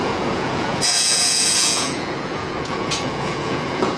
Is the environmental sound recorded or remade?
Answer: remade